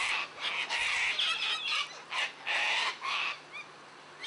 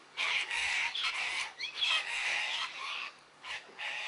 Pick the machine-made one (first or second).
second